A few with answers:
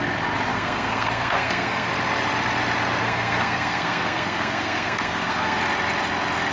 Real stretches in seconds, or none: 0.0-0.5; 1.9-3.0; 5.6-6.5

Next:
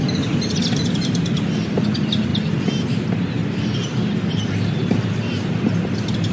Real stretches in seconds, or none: 2.3-2.9; 3.4-4.3

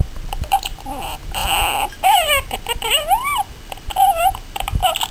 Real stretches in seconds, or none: none

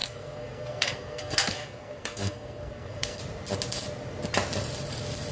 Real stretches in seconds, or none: 3.2-5.3